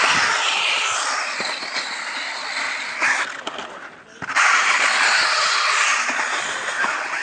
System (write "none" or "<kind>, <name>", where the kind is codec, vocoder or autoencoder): none